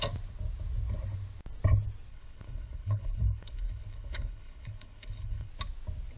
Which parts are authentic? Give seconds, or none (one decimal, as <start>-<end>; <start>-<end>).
0.0-2.1; 5.5-6.2